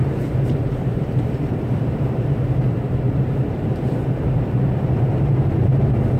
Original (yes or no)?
no